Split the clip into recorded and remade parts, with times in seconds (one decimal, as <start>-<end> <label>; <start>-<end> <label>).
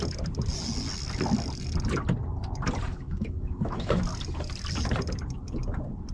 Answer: 0.0-2.9 recorded; 2.9-4.0 remade; 4.0-6.1 recorded